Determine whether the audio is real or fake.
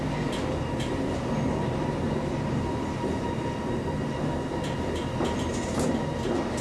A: real